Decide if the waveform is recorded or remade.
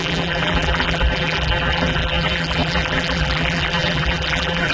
remade